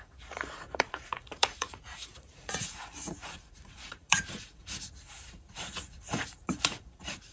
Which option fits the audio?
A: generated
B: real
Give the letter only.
A